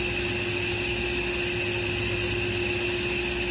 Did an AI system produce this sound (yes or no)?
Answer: no